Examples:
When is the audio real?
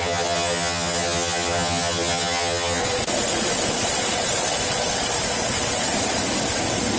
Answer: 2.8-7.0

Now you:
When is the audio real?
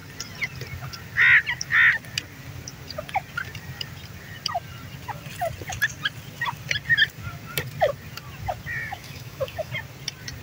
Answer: 0.0-8.8; 9.7-10.4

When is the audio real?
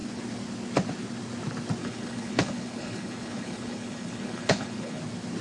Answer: 0.0-1.8; 5.0-5.4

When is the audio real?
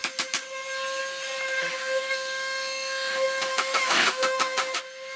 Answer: 0.0-1.7; 4.8-5.2